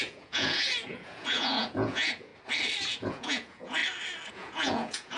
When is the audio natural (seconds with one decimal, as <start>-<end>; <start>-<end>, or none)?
2.3-2.9; 3.8-4.3